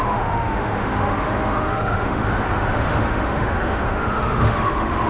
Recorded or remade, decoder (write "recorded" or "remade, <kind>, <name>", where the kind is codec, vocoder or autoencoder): remade, autoencoder, DAC-VAE